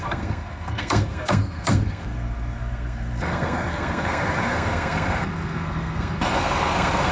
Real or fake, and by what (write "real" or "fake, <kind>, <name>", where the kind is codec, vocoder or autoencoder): fake, codec, SNAC